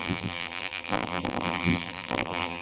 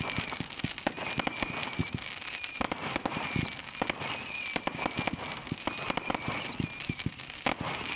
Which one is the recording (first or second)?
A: second